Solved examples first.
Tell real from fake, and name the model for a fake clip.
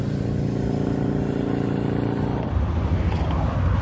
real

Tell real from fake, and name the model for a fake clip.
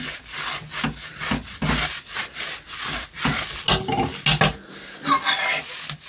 real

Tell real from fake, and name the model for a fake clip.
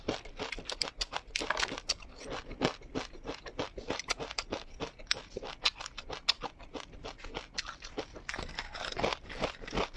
real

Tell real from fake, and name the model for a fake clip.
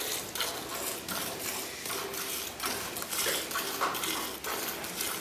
real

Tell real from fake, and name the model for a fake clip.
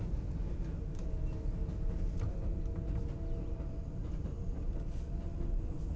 real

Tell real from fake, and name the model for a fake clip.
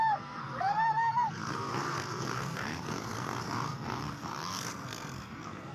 fake, codec, SNAC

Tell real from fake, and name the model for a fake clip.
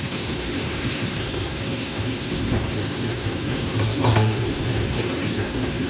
fake, codec, SNAC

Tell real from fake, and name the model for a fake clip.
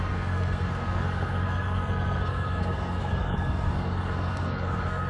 fake, codec, SNAC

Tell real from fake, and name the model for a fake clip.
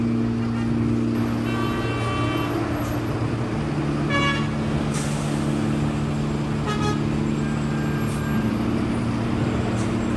real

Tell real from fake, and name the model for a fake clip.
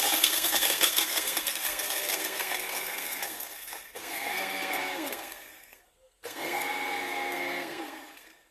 fake, codec, SNAC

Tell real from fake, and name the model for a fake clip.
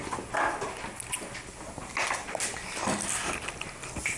real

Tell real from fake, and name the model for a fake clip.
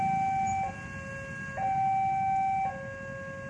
real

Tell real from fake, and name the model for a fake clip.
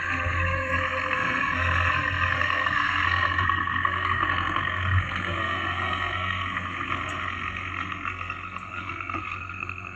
fake, codec, SNAC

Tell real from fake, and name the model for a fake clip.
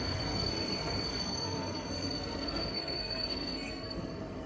fake, codec, SNAC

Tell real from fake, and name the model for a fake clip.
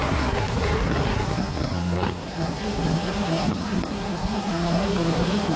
fake, codec, SNAC